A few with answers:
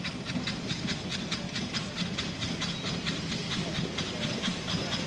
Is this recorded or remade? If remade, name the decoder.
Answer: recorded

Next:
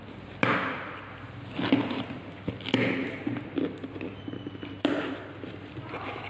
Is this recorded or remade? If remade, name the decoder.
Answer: recorded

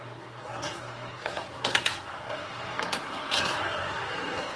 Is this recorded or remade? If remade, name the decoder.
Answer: remade, codec, SNAC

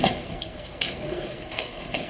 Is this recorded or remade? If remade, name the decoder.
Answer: remade, codec, SNAC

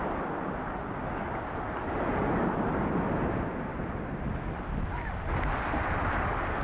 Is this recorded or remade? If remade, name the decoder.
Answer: recorded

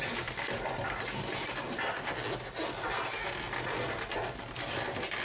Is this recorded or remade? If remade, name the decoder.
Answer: recorded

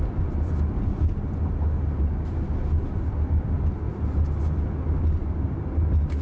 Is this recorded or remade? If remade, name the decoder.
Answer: recorded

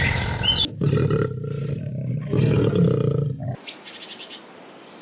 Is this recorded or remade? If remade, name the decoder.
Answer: recorded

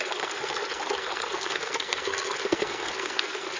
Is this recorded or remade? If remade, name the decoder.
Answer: remade, codec, SNAC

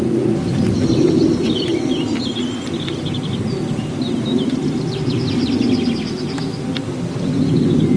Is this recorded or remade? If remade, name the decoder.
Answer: recorded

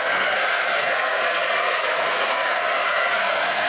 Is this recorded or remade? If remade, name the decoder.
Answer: remade, codec, SNAC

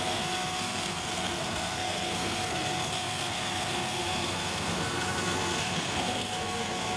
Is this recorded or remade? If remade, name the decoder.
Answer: remade, codec, SNAC